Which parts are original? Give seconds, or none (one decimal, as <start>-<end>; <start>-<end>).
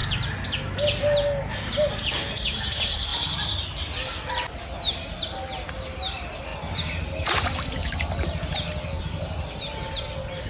0.0-10.5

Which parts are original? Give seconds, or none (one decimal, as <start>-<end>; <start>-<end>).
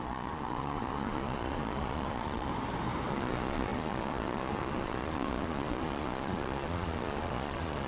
2.5-3.1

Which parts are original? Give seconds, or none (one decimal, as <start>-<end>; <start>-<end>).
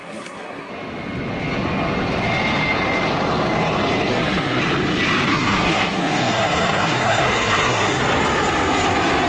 0.7-4.1; 4.6-5.3; 8.0-9.3